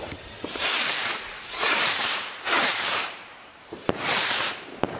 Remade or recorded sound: remade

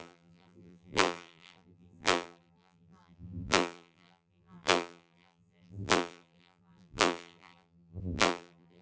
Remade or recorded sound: remade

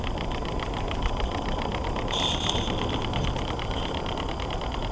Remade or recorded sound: recorded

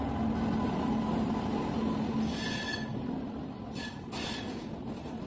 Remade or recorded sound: recorded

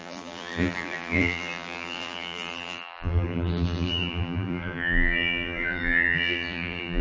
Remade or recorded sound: remade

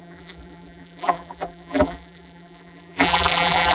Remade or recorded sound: remade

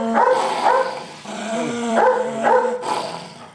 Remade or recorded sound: remade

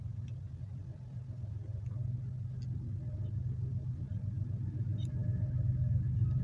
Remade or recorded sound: recorded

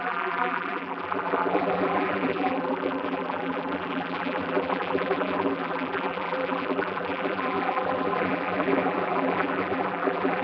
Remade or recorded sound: remade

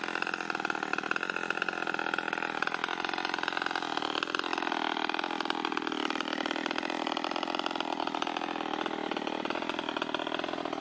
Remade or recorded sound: recorded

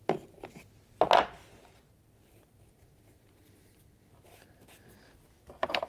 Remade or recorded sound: recorded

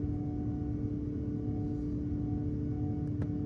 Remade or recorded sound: recorded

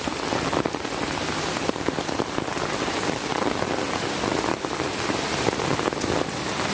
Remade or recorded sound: recorded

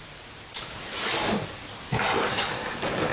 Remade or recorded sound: remade